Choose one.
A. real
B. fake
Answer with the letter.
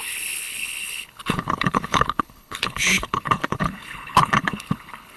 B